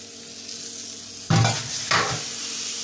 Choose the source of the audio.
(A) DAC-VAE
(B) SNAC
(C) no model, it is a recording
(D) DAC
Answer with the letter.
C